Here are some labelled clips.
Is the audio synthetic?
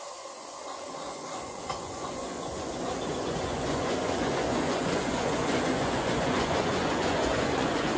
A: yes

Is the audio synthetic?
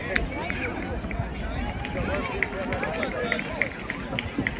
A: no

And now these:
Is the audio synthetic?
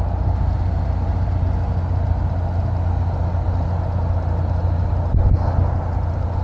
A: no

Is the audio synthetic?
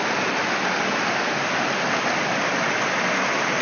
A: no